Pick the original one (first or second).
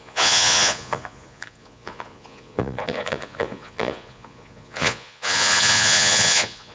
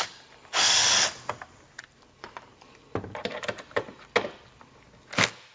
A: second